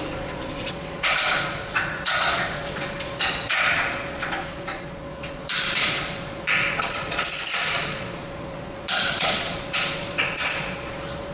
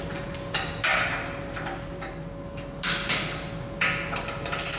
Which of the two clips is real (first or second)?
second